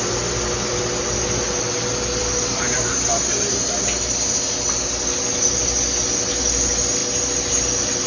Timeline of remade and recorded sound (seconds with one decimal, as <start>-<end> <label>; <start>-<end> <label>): 0.0-8.1 recorded